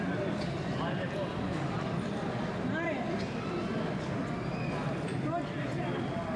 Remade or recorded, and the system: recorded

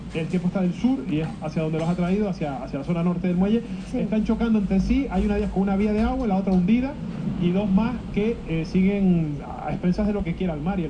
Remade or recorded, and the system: recorded